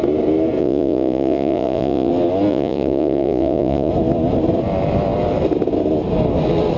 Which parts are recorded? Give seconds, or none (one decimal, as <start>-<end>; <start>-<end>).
0.0-0.6; 2.1-2.5; 3.9-6.8